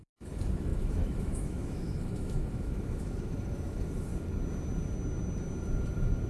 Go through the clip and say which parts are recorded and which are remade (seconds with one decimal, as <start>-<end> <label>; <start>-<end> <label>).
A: 0.0-4.1 remade; 4.1-6.3 recorded